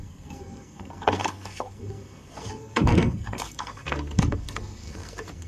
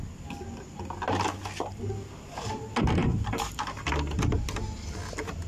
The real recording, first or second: second